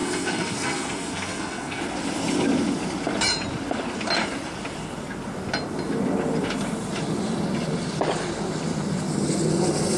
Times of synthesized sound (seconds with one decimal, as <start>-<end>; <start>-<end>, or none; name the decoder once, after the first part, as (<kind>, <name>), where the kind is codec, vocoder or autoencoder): 0.0-1.8 (codec, SNAC)